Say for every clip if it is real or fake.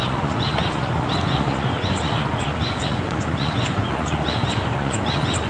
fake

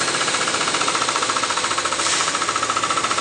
fake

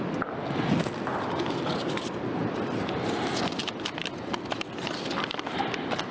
real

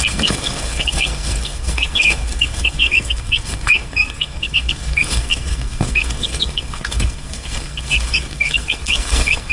fake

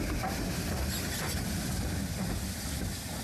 real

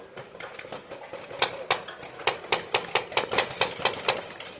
real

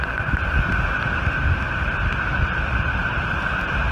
real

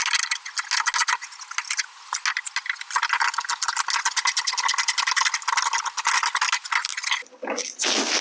real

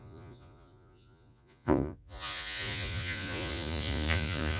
fake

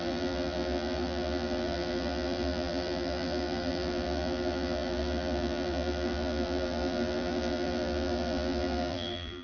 fake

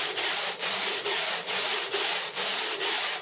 real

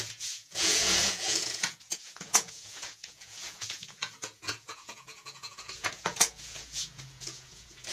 fake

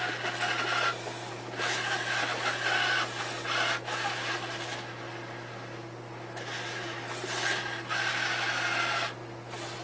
real